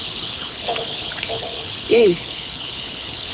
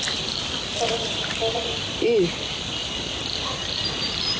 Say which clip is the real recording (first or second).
second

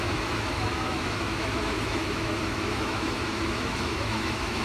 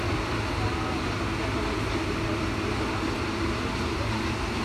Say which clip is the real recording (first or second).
second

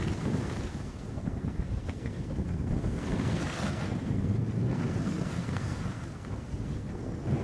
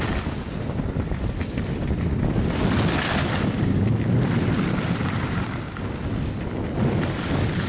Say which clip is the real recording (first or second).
second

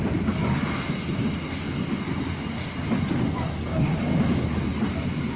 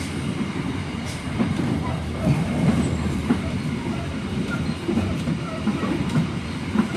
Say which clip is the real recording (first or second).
first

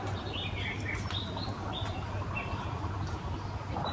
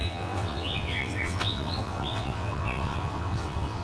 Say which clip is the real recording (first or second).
first